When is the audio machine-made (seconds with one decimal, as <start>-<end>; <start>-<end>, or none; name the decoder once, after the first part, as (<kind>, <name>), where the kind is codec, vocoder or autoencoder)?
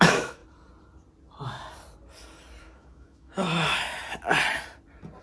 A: 0.0-0.4 (autoencoder, DAC-VAE); 2.6-4.0